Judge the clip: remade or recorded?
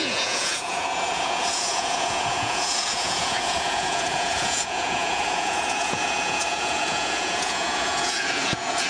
remade